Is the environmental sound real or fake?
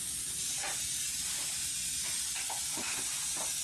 real